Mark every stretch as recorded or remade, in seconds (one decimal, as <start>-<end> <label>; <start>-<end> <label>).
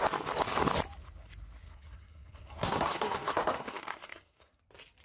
0.0-1.6 recorded; 1.6-4.6 remade; 4.6-5.0 recorded